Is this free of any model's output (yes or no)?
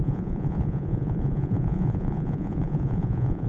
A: no